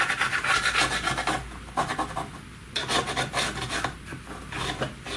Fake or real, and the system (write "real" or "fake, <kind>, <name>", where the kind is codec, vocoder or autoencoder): real